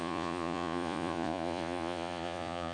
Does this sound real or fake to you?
fake